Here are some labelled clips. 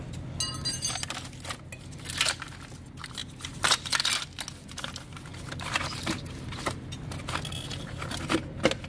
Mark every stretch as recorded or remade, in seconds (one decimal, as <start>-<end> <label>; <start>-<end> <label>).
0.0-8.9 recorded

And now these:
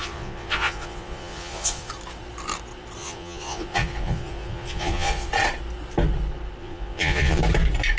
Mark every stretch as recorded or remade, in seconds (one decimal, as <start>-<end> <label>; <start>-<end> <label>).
0.0-1.9 remade; 1.9-3.0 recorded; 3.0-5.3 remade; 5.3-6.6 recorded; 6.6-7.4 remade; 7.4-8.0 recorded

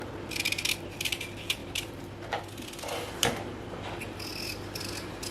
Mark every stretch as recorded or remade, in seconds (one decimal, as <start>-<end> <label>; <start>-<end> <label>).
0.0-1.6 recorded; 1.6-3.3 remade; 3.3-5.3 recorded

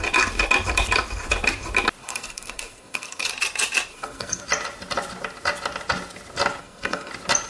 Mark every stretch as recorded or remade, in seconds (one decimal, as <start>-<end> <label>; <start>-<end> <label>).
0.0-2.0 recorded; 2.0-3.3 remade; 3.3-3.9 recorded; 3.9-4.4 remade; 4.4-6.6 recorded; 6.6-7.1 remade; 7.1-7.5 recorded